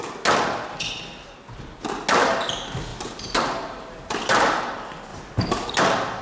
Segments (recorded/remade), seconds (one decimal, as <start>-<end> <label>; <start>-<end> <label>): 0.0-2.9 recorded; 2.9-4.1 remade; 4.1-5.1 recorded; 5.1-5.8 remade; 5.8-6.2 recorded